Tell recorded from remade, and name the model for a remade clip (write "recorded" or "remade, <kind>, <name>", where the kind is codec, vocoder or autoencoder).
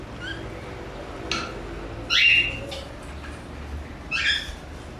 recorded